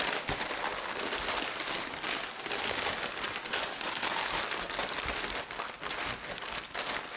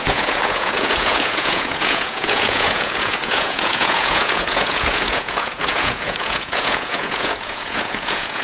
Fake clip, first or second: second